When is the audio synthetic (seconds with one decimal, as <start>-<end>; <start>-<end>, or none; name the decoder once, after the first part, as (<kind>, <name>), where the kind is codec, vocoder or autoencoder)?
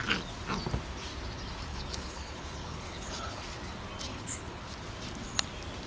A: 1.7-3.4 (codec, HILCodec); 4.1-4.6